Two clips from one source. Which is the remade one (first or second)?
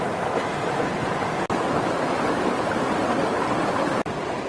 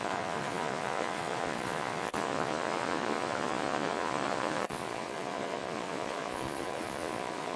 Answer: second